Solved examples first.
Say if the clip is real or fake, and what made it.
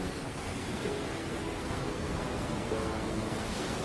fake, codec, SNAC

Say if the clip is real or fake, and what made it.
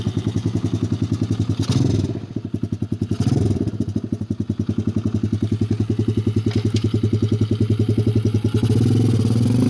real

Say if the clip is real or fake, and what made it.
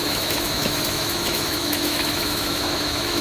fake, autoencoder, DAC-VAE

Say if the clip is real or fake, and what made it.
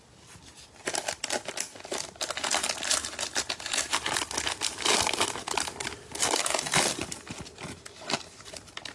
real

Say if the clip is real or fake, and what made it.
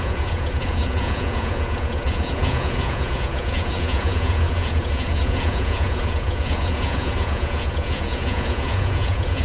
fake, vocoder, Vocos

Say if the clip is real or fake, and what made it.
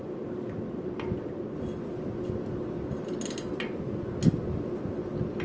real